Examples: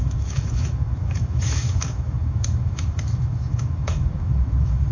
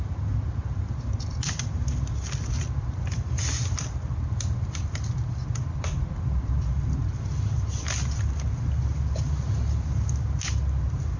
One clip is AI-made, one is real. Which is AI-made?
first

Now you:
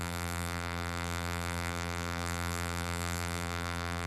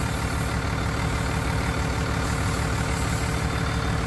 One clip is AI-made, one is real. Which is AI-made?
first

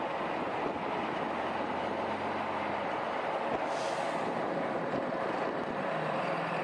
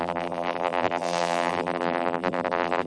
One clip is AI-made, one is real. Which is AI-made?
second